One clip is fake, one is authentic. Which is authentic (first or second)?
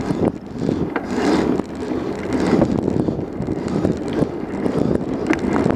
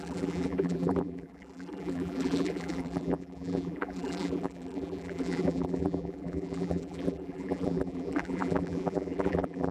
first